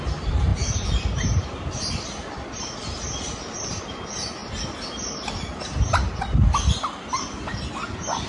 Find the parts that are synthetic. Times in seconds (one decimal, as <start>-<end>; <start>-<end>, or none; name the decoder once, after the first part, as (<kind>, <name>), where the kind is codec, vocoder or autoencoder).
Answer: none